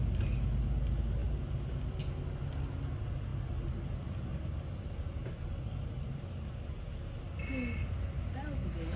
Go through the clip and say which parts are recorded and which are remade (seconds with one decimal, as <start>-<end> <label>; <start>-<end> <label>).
0.0-9.0 recorded